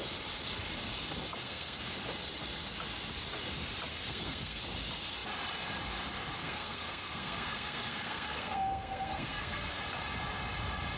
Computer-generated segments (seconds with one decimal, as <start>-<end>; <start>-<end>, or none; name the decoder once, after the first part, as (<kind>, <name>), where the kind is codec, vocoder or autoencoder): 1.3-1.8 (codec, SNAC); 3.9-4.6; 6.4-9.8